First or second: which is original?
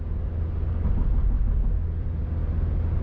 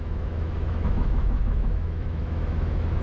first